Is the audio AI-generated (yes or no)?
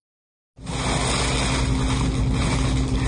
no